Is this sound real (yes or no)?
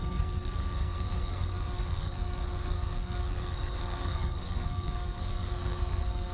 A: no